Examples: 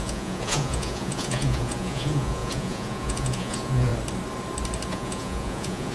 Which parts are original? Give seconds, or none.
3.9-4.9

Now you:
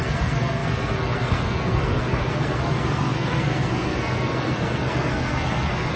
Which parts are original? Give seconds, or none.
none